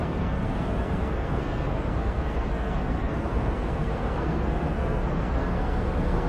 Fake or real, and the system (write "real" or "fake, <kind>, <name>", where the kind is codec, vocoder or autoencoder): fake, codec, SNAC